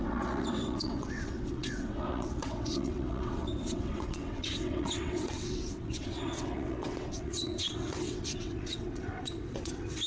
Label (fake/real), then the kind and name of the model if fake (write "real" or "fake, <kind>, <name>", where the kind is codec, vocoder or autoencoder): fake, vocoder, WaveNeXt